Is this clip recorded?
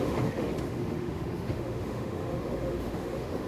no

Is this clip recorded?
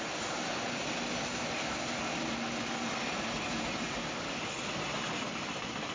yes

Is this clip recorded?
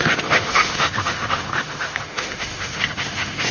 no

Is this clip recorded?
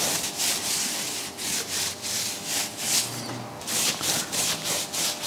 yes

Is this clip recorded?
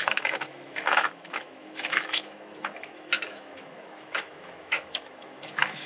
no